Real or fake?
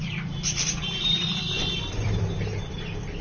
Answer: fake